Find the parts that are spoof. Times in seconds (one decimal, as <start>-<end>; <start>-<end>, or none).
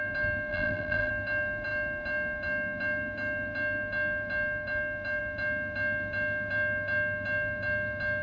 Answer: 0.5-1.1